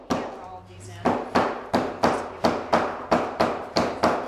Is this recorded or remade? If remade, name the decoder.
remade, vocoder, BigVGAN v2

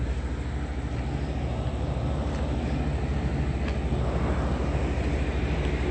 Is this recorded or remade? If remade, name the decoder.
recorded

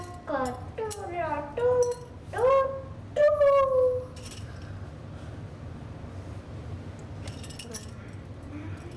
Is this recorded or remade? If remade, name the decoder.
recorded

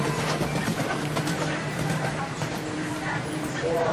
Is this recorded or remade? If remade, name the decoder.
remade, vocoder, BigVGAN v2